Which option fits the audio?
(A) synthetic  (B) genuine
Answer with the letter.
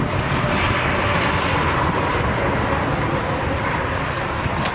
B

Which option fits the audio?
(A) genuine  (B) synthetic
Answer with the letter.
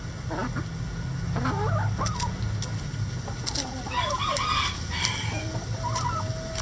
A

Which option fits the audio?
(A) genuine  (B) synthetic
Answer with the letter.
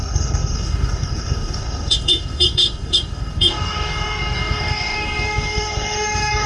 B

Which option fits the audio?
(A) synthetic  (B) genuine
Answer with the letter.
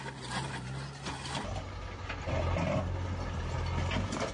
B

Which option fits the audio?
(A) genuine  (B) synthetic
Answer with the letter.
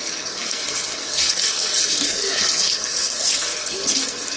B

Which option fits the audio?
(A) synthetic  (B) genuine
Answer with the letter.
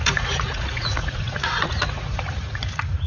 A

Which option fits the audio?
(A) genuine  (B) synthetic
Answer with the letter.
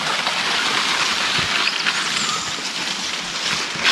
A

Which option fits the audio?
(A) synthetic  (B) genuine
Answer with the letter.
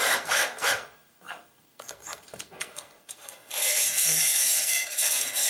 A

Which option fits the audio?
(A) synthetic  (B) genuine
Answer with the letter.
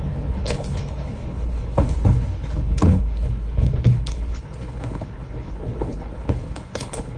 A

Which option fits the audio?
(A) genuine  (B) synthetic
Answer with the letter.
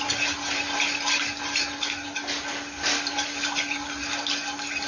A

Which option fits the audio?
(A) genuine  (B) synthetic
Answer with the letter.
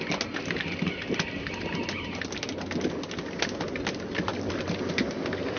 A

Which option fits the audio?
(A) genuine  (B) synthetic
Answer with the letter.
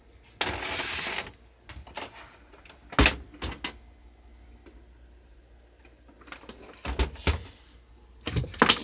A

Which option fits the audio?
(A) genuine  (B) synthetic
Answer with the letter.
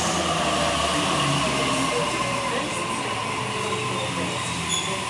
A